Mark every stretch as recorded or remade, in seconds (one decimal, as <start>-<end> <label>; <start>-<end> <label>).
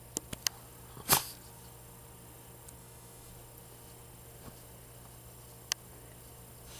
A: 0.0-2.8 recorded; 2.8-3.3 remade; 3.3-6.8 recorded